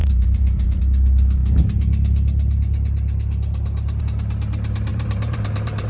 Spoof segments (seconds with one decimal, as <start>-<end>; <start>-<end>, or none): 0.0-0.8; 4.9-5.9